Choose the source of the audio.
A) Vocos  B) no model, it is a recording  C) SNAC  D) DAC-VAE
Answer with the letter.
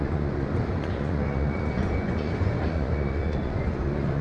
A